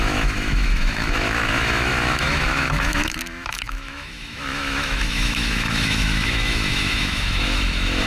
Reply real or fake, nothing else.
fake